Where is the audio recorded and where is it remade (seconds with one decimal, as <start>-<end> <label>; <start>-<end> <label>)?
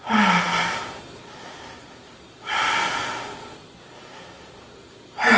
0.0-5.4 recorded